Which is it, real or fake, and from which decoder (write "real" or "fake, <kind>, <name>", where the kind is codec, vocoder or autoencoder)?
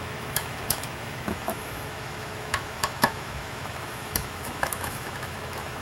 fake, autoencoder, DAC-VAE